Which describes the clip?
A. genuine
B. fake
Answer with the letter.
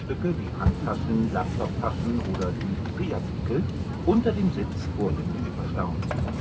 B